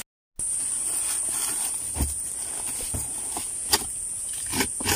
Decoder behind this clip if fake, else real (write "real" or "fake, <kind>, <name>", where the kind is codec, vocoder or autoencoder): real